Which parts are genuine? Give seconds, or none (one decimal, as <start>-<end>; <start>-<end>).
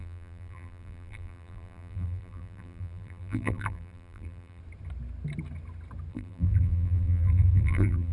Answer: 4.6-6.1